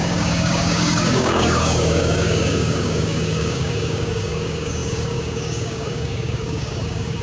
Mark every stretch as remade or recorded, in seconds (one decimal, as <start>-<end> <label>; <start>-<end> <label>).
0.0-7.2 remade